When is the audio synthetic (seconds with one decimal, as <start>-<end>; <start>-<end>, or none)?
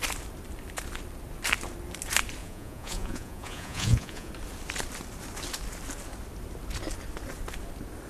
2.4-4.3